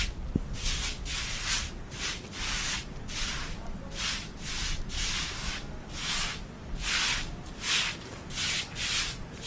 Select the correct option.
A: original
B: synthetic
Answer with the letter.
A